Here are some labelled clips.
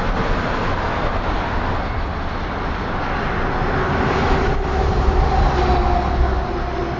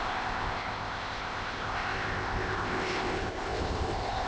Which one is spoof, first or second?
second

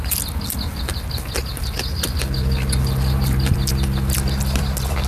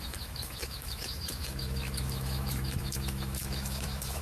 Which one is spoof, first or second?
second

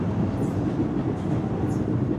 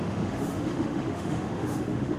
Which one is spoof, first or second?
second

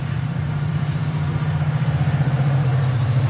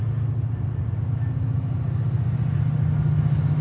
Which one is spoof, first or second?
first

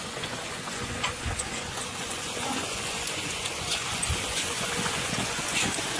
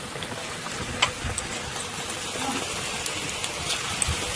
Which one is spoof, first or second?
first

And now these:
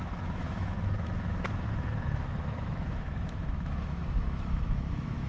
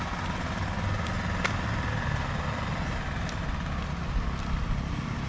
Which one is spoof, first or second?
first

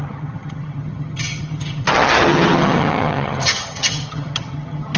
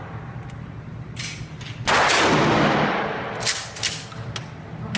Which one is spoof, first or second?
first